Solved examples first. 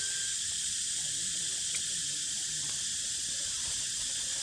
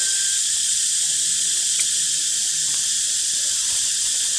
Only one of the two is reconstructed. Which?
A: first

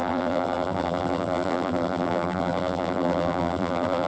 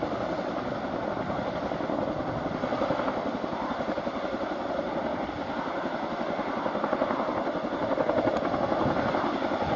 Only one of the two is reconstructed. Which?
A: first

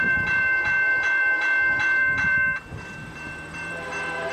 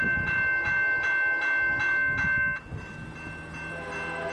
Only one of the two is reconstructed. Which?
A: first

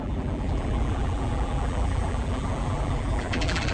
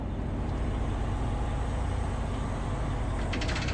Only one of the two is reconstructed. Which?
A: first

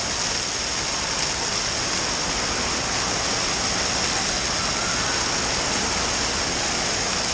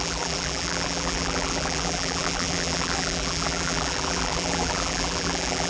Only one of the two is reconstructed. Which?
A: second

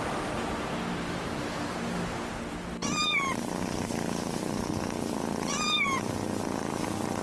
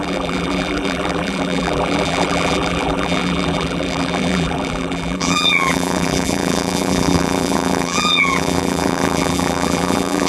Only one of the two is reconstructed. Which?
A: second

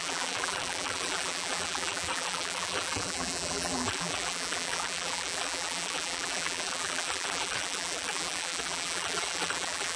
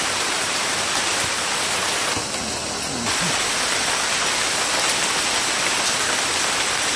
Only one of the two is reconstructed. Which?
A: first